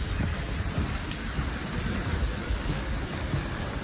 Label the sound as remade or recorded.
remade